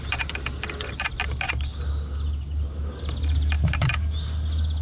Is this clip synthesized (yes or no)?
no